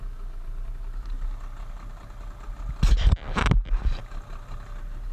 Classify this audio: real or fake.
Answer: real